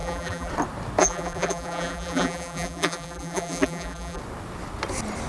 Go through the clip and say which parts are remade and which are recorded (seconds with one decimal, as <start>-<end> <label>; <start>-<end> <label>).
0.0-0.5 remade; 0.5-1.0 recorded; 1.0-4.2 remade; 4.2-5.3 recorded